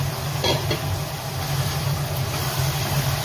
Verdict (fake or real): real